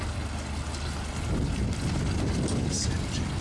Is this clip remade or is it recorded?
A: recorded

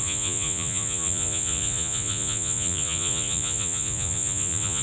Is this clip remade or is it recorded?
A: remade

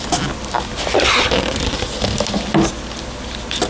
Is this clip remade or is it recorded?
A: recorded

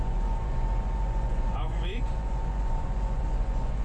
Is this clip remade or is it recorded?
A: remade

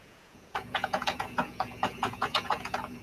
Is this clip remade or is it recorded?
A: remade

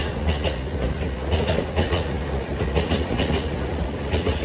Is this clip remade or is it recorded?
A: remade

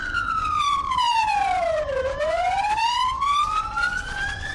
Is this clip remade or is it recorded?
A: remade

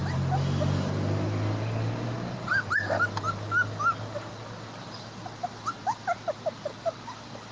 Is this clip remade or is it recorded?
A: recorded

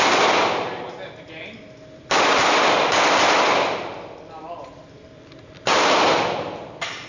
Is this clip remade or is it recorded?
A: recorded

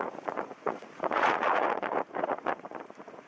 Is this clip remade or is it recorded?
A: remade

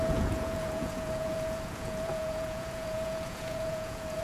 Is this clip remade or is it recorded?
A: remade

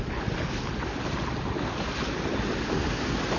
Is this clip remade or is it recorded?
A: recorded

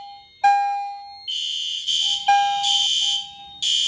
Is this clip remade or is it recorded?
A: recorded